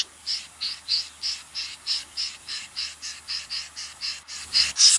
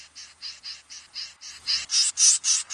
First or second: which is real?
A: second